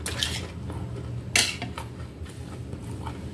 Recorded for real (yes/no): yes